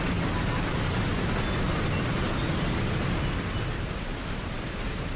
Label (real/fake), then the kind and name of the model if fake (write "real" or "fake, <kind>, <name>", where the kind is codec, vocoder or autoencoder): real